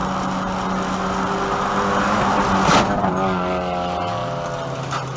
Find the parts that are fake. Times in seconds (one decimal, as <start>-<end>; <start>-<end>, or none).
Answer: none